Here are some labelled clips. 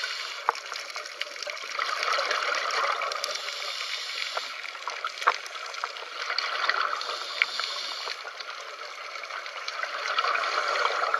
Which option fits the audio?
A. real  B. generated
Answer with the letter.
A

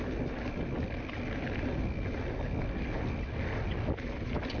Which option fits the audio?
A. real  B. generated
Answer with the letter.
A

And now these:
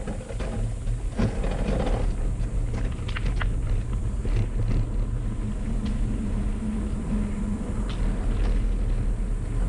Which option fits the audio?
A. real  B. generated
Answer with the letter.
A